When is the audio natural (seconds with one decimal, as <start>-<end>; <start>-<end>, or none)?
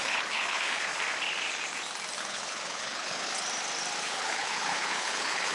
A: 0.9-2.2; 3.3-4.0